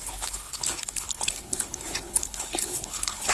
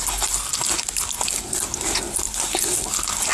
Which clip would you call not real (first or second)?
first